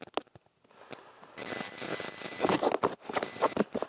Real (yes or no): yes